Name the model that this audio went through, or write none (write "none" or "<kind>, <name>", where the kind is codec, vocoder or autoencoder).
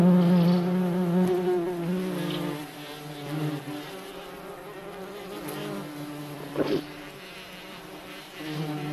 none